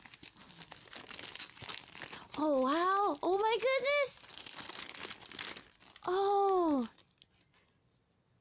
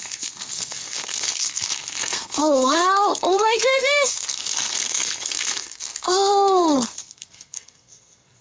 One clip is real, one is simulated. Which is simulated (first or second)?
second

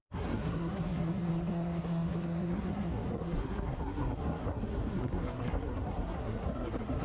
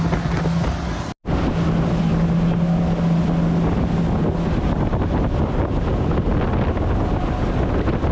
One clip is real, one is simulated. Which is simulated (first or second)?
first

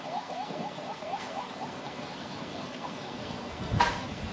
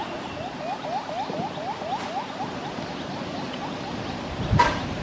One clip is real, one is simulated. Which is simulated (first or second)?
first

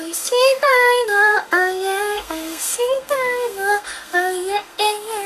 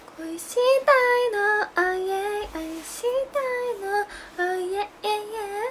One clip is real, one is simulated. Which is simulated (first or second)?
first